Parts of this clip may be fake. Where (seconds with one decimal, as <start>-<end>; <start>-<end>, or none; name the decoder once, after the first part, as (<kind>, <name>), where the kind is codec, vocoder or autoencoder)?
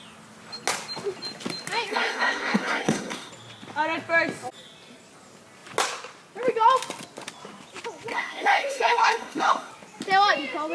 1.9-3.3 (codec, SNAC); 8.1-9.7